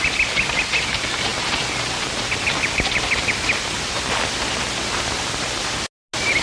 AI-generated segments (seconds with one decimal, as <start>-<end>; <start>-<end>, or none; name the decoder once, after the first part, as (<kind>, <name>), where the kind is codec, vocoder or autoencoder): none